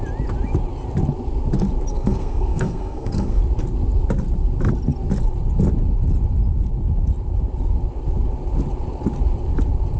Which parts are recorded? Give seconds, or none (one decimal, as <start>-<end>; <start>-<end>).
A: 0.0-1.9; 3.4-10.0